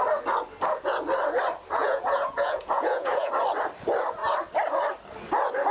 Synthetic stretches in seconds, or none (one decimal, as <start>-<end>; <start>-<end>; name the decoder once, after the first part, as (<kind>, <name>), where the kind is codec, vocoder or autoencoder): 1.8-3.3 (vocoder, Vocos)